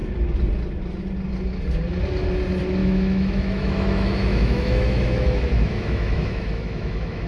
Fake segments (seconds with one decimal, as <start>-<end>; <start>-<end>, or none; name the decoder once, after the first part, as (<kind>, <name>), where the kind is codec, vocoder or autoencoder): 2.8-7.3 (autoencoder, DAC-VAE)